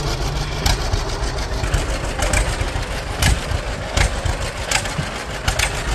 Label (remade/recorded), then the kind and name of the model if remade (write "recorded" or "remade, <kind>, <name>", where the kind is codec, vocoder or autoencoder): recorded